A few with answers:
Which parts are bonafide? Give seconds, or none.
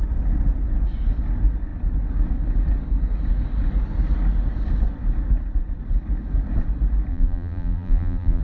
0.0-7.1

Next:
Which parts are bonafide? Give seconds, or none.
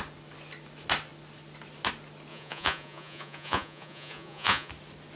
0.0-2.3; 4.7-5.2